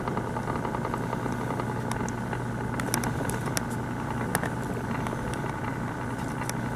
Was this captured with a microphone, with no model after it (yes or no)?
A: yes